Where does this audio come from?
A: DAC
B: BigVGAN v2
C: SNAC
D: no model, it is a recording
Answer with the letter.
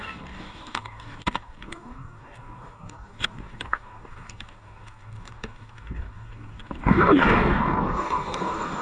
A